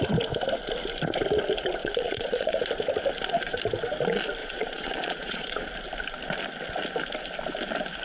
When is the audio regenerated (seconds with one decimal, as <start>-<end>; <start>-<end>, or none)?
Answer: 1.8-2.6; 4.4-5.7